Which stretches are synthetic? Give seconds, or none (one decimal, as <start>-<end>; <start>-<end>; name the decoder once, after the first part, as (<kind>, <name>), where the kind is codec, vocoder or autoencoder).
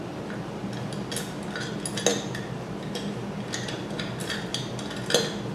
none